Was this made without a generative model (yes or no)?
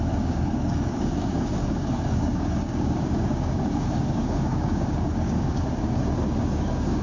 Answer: no